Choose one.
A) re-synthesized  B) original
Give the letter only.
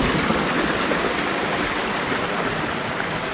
B